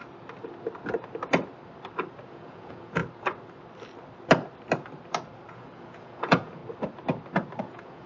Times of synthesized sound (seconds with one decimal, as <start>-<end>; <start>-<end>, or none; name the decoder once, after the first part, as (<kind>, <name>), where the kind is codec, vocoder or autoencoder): 2.3-3.0 (vocoder, Vocos); 5.5-6.6; 7.6-8.1